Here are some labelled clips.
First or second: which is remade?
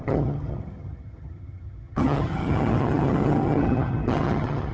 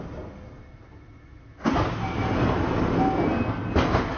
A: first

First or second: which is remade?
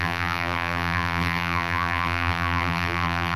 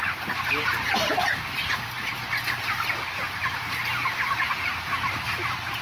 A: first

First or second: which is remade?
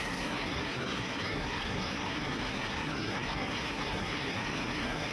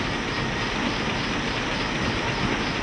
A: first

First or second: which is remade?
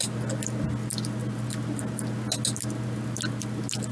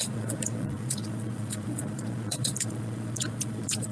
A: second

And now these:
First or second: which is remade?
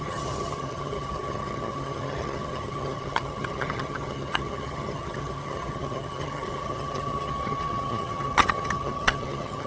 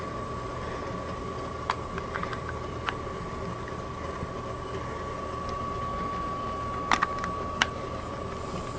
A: first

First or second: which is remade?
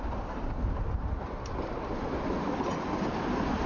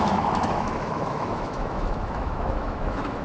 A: second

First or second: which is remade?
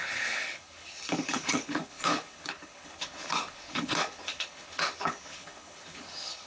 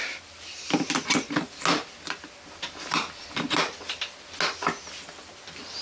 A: first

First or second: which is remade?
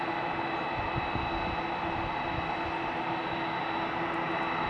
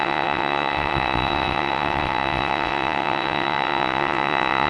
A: second